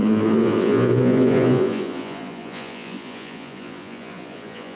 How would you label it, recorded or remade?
remade